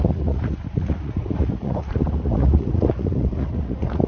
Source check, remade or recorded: remade